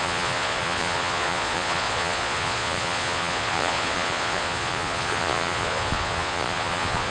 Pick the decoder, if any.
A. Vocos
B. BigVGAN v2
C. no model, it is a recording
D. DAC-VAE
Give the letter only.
A